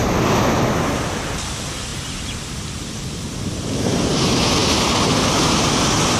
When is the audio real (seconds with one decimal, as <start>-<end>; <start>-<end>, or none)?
0.0-6.2